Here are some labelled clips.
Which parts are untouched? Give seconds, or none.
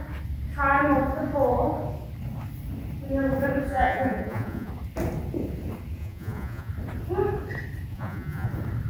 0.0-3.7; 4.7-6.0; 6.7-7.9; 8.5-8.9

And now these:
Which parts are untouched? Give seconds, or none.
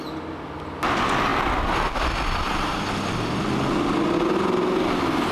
0.0-5.3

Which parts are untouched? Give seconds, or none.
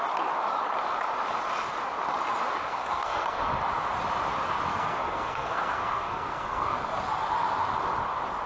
0.0-2.7; 3.5-4.7; 7.0-8.5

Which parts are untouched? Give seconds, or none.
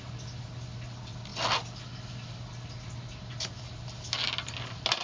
0.0-5.0